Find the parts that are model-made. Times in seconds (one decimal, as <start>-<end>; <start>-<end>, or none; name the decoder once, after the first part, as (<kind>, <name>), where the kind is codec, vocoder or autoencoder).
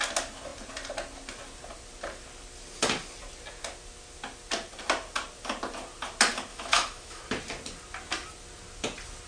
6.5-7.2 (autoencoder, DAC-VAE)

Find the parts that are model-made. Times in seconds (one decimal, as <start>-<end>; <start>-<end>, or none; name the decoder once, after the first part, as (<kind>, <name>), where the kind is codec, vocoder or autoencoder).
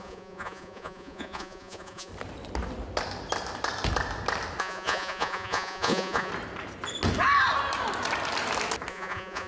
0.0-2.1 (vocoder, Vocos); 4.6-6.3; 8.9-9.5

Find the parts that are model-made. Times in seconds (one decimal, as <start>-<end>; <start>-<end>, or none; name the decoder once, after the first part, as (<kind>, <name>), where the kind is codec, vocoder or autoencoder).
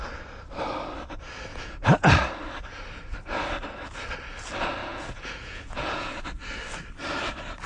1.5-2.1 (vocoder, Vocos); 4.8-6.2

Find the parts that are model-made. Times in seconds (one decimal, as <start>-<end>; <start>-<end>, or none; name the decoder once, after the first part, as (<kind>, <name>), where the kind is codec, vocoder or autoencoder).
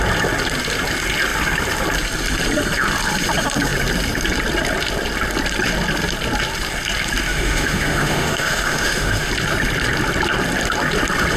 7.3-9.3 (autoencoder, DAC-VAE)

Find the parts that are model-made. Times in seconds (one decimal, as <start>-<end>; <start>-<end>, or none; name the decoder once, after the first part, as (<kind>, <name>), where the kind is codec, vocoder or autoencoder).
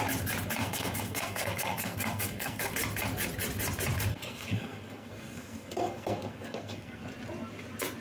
0.6-2.7 (codec, SNAC); 4.1-7.1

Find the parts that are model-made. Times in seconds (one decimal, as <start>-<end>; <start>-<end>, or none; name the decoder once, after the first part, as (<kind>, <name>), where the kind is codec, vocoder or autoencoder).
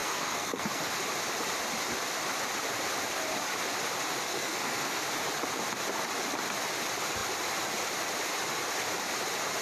0.0-0.9 (codec, SNAC); 4.3-5.0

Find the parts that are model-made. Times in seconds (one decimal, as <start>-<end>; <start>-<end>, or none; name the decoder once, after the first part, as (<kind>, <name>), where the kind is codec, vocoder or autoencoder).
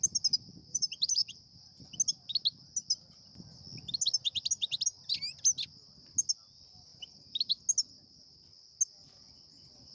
0.6-1.8 (vocoder, BigVGAN v2); 6.9-7.6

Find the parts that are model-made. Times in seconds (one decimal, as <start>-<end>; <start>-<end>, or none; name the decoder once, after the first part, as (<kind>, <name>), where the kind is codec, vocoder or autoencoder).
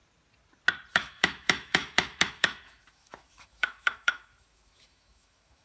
0.9-5.6 (autoencoder, DAC-VAE)